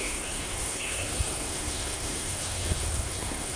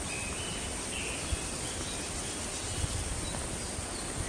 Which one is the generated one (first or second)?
first